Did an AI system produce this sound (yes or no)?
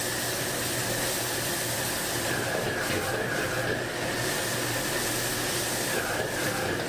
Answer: no